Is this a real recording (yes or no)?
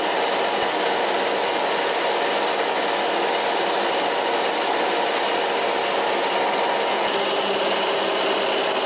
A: yes